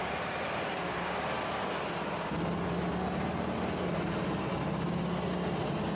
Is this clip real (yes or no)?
yes